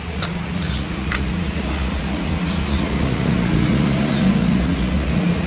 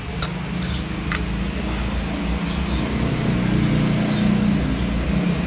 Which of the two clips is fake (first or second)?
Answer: first